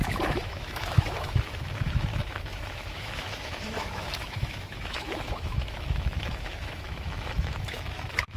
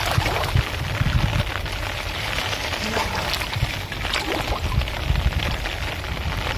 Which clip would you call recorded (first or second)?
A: second